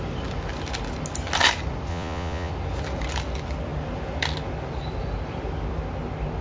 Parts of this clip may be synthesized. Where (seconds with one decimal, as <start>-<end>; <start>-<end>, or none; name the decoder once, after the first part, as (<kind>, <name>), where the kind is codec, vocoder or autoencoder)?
1.9-2.5 (vocoder, Vocos)